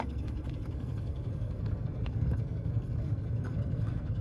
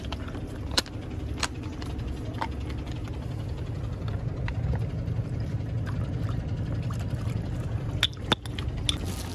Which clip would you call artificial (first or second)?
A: first